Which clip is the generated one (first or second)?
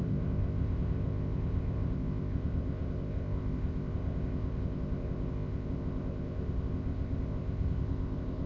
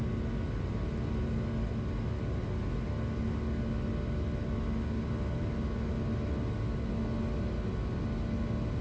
first